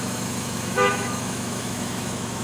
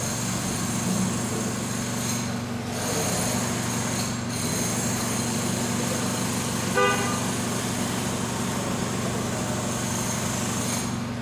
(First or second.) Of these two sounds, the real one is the second